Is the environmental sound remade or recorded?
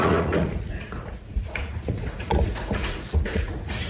remade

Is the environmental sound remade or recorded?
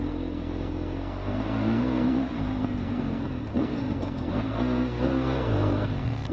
remade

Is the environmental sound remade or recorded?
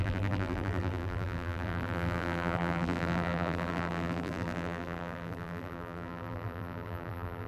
remade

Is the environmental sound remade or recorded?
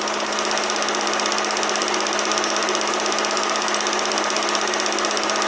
recorded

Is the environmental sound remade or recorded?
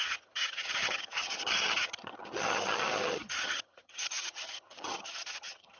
remade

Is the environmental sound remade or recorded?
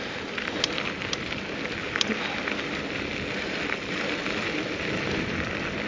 recorded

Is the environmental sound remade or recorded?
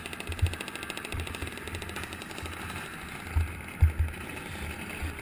recorded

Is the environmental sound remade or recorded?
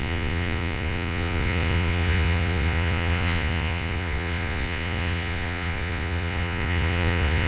remade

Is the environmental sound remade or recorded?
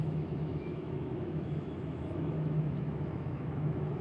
remade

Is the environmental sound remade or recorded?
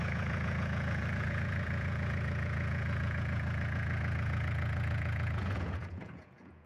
remade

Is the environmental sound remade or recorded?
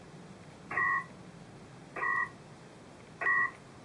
recorded